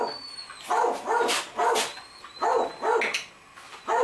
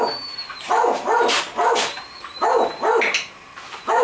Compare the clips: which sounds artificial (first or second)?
second